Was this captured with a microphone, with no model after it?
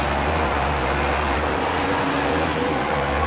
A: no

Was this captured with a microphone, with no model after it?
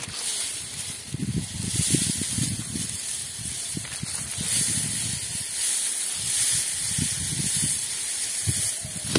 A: yes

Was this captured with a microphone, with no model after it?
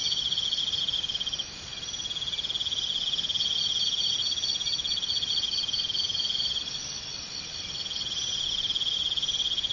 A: yes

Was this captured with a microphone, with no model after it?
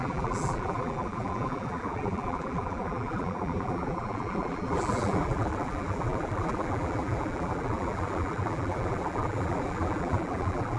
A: no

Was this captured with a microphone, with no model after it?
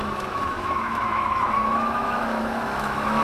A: no